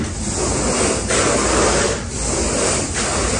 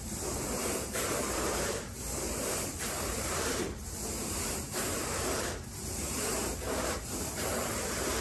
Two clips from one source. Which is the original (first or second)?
first